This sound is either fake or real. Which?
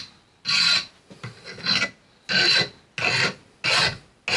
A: real